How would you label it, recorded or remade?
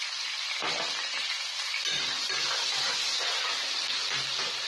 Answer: recorded